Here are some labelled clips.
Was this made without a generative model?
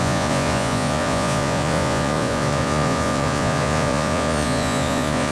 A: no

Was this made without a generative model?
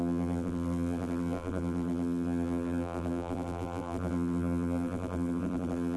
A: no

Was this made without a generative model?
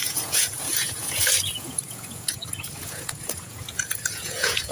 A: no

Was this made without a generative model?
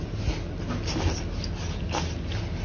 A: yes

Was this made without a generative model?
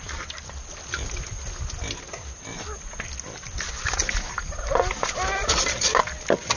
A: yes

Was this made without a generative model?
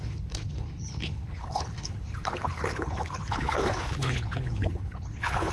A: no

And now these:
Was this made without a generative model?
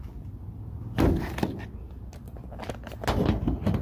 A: yes